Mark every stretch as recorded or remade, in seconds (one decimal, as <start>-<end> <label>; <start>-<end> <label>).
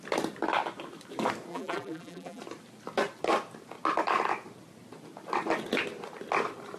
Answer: 0.0-1.5 recorded; 1.5-2.4 remade; 2.4-6.8 recorded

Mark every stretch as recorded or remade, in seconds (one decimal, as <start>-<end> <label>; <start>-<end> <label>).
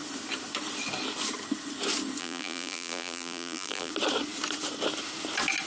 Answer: 0.0-2.2 recorded; 2.2-3.9 remade; 3.9-5.7 recorded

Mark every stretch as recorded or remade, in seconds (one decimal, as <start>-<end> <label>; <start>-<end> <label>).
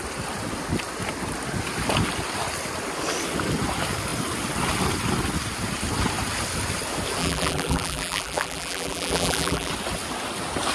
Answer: 0.0-7.2 recorded; 7.2-9.7 remade; 9.7-10.7 recorded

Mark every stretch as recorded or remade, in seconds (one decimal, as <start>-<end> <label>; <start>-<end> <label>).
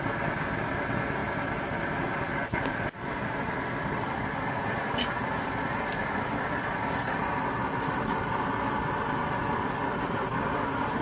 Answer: 0.0-1.2 recorded; 1.2-4.9 remade; 4.9-6.0 recorded; 6.0-7.4 remade; 7.4-11.0 recorded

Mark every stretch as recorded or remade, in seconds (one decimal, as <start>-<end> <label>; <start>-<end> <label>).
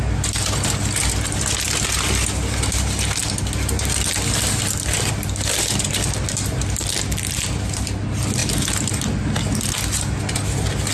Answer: 0.0-10.9 recorded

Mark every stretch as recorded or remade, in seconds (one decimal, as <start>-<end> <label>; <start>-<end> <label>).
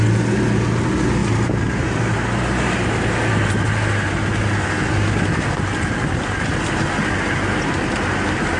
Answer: 0.0-1.2 recorded; 1.2-2.0 remade; 2.0-8.6 recorded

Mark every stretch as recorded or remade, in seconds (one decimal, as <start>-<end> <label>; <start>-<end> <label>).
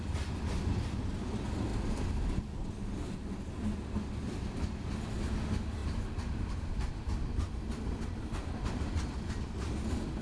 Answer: 0.0-5.8 recorded; 5.8-6.9 remade; 6.9-10.2 recorded